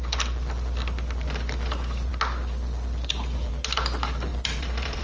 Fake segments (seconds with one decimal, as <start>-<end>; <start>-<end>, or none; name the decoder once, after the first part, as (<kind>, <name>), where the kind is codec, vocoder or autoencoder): 4.3-5.0 (vocoder, BigVGAN v2)